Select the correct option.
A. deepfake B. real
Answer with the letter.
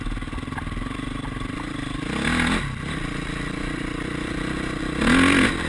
B